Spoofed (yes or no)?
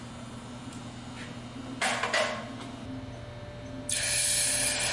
no